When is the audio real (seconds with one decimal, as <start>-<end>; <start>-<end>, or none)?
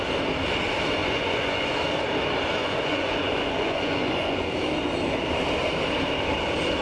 0.0-1.0; 1.8-2.6; 4.5-6.8